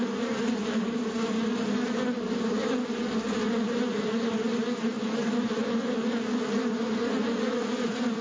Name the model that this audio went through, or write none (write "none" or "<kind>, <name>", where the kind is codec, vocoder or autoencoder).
none